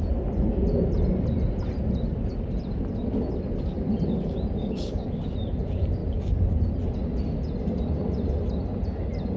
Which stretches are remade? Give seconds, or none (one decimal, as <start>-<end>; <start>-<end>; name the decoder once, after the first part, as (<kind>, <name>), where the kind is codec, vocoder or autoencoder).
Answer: 4.6-5.2 (codec, DAC)